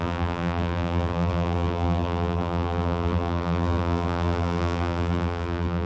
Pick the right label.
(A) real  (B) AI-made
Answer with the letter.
B